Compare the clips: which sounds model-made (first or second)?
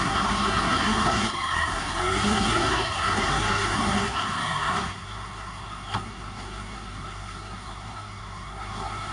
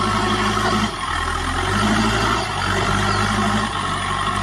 first